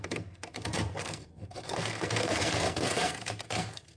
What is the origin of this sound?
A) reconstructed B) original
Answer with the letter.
A